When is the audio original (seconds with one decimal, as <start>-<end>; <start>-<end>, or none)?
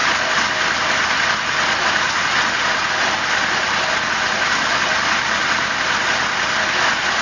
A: 0.0-7.2